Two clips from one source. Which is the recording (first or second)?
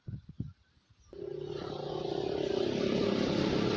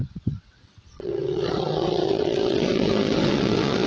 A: first